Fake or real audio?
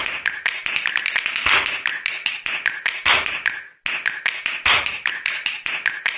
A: real